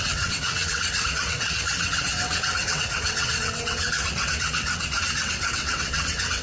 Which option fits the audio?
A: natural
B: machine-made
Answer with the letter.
B